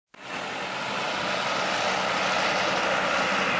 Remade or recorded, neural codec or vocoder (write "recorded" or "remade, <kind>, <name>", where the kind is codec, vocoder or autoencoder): recorded